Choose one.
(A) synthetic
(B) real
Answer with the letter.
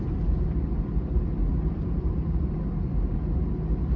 B